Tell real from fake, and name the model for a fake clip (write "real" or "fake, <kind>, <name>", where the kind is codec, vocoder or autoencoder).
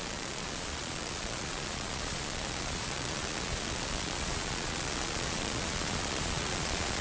fake, vocoder, Vocos